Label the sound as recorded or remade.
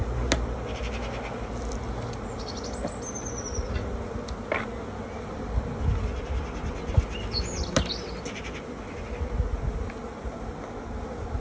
recorded